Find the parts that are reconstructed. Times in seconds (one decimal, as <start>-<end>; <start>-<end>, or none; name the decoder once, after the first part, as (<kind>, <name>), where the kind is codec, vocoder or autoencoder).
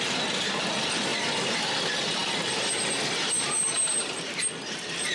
none